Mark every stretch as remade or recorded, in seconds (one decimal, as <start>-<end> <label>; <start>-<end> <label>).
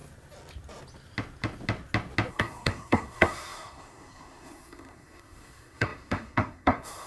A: 0.0-2.3 recorded; 2.3-7.1 remade